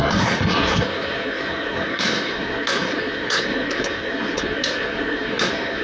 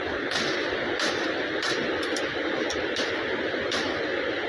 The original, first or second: second